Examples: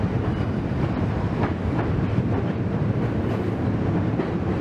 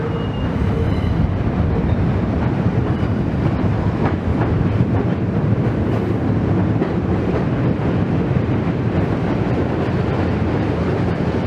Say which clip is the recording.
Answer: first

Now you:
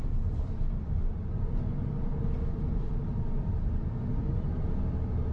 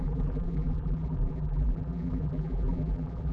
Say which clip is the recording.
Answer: first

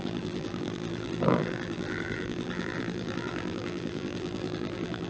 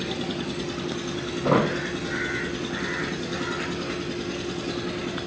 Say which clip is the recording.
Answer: second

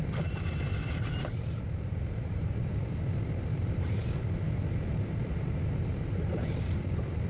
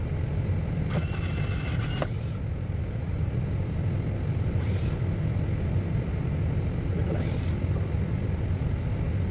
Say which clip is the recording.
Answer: second